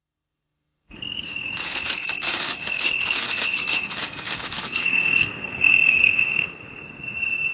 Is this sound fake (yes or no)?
yes